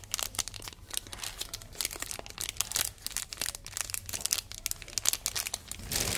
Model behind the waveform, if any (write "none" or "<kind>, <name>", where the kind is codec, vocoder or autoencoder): none